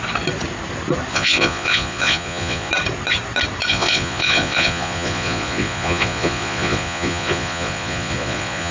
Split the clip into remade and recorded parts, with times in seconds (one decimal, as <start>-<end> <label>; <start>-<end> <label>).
0.0-1.1 recorded; 1.1-2.7 remade; 2.7-3.7 recorded; 3.7-8.7 remade